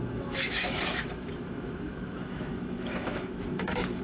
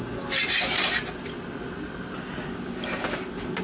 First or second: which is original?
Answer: second